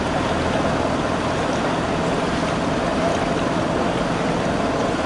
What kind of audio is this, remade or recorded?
recorded